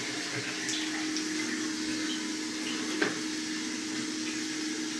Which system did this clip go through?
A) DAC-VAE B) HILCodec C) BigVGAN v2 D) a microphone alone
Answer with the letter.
D